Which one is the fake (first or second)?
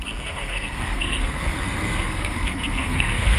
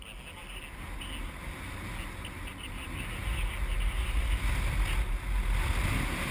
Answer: first